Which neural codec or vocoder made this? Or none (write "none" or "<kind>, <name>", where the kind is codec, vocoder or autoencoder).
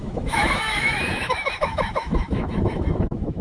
autoencoder, DAC-VAE